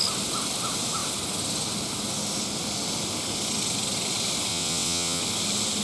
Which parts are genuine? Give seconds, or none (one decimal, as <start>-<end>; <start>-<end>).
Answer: 0.0-4.5; 5.2-5.8